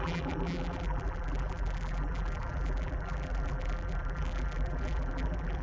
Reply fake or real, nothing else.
fake